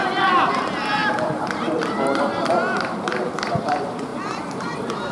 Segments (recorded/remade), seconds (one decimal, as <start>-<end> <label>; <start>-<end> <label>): 0.0-5.1 remade